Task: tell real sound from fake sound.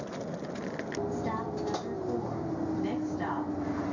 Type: real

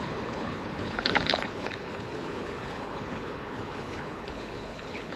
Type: fake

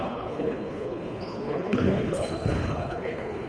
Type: fake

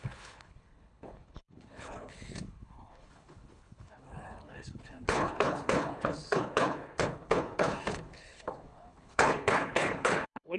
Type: fake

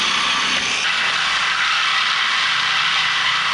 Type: real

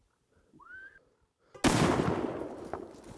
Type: real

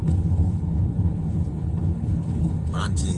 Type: fake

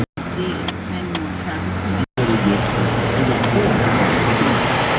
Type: real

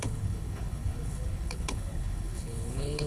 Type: fake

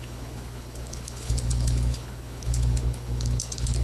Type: fake